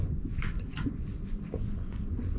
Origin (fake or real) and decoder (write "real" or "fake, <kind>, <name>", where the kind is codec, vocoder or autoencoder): fake, vocoder, Vocos